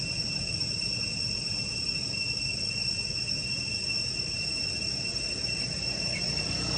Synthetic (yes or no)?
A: no